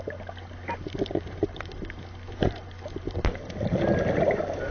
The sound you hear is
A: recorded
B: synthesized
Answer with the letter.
A